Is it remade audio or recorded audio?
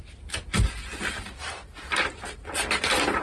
recorded